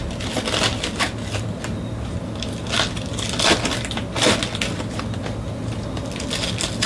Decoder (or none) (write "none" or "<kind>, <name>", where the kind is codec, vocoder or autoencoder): none